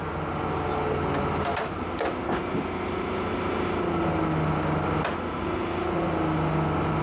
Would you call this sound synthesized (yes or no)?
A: no